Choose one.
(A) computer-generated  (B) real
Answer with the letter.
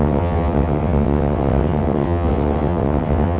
A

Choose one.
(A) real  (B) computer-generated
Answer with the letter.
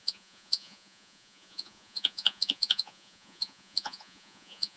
B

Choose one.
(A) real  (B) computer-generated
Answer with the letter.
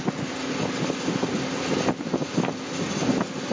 A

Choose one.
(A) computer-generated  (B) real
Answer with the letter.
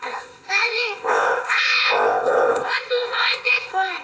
A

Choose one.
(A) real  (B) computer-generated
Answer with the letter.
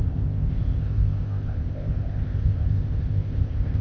B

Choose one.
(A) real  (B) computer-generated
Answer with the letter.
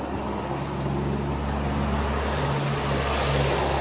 A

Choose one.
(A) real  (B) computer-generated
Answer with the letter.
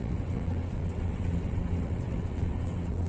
B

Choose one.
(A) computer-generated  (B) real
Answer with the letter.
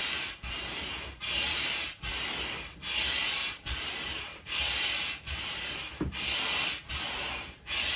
A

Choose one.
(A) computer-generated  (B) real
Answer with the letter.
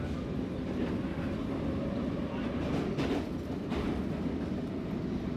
B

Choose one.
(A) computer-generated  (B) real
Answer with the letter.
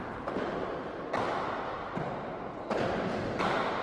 B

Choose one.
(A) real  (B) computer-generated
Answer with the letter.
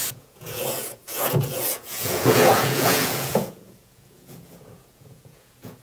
B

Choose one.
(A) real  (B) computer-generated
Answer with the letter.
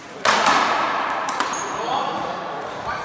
B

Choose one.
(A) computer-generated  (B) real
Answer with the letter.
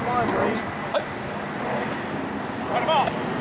B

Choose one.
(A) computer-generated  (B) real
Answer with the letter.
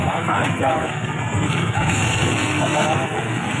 A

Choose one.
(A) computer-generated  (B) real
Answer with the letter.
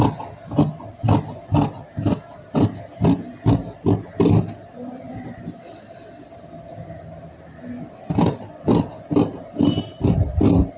A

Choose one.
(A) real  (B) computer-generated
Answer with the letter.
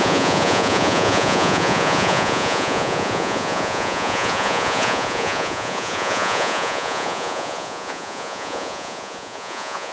B